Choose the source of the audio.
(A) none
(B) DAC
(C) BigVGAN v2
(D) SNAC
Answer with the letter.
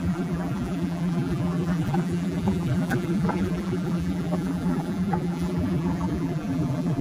C